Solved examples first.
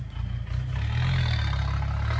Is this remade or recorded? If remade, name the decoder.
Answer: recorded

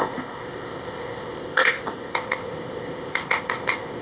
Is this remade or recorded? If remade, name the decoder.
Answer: remade, codec, ZipCodec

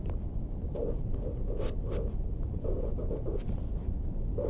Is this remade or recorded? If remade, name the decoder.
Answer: recorded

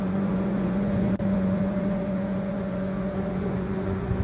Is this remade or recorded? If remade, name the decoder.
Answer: remade, vocoder, Vocos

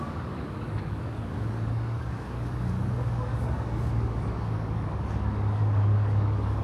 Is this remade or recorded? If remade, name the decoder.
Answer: remade, codec, DAC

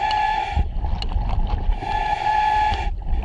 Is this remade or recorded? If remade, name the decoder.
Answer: recorded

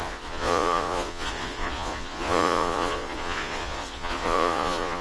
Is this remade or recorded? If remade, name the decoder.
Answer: remade, vocoder, Vocos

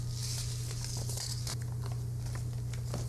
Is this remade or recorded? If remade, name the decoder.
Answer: recorded